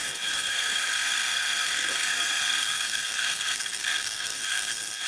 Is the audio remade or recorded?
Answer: remade